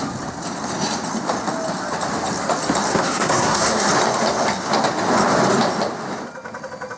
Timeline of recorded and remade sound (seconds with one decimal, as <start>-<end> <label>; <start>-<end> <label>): 0.0-2.9 recorded; 2.9-3.9 remade; 3.9-7.0 recorded